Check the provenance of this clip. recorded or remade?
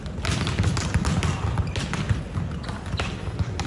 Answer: recorded